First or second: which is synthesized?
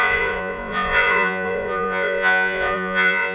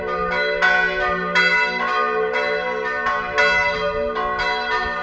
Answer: first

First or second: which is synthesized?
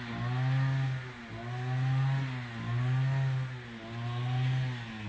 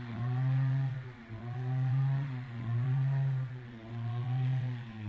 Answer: second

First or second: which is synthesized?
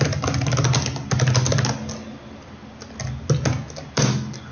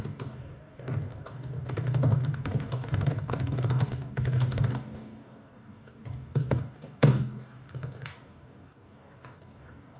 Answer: second